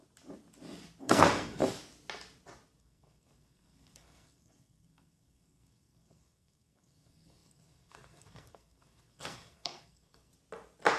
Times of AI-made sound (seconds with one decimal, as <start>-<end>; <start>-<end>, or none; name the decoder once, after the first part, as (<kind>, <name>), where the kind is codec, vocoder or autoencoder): 1.0-1.6 (codec, SNAC); 2.8-10.3